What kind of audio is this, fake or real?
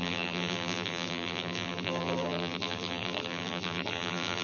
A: fake